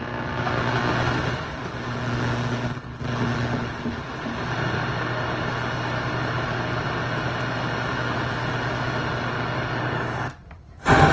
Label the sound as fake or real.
real